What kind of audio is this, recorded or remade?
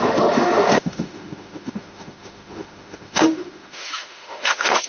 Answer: remade